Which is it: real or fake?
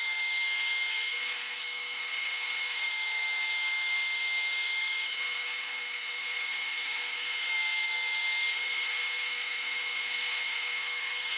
fake